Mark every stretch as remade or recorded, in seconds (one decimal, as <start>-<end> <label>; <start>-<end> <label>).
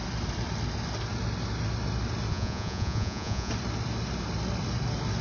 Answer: 0.0-2.3 recorded; 2.3-3.5 remade; 3.5-5.2 recorded